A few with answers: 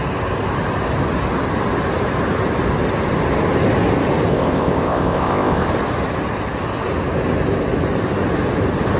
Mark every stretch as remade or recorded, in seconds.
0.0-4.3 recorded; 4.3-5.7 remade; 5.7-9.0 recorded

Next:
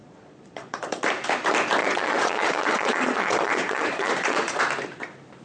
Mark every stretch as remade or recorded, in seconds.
0.0-1.0 remade; 1.0-1.8 recorded; 1.8-4.6 remade; 4.6-5.4 recorded

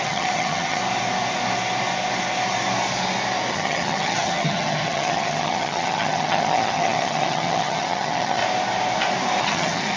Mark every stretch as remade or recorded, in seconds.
0.0-0.8 remade; 0.8-3.5 recorded; 3.5-8.4 remade; 8.4-9.4 recorded; 9.4-10.0 remade

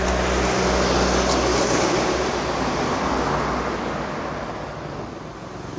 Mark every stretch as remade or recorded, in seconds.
0.0-1.5 recorded; 1.5-3.2 remade; 3.2-5.8 recorded

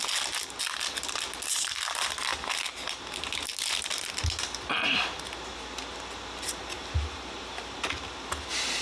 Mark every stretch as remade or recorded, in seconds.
0.0-8.8 recorded

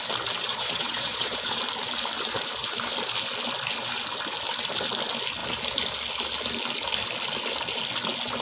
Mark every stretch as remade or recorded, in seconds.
0.0-0.5 recorded; 0.5-1.6 remade; 1.6-8.4 recorded